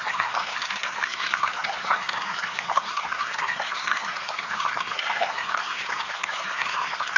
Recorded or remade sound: remade